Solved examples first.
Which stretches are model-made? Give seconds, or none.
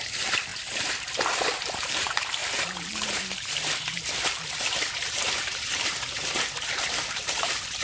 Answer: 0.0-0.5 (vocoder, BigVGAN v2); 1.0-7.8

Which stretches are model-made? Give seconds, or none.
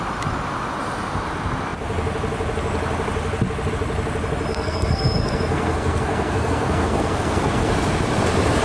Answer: 4.5-7.7 (codec, SNAC)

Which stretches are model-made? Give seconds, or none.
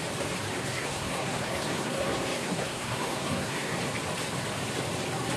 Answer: 0.6-3.8 (codec, SNAC)